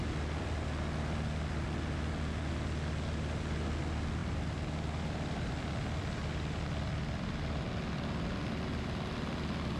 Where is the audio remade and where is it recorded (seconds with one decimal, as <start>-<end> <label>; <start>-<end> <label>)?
0.0-4.2 recorded; 4.2-5.7 remade; 5.7-9.8 recorded